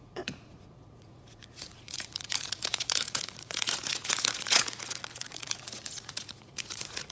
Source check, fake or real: fake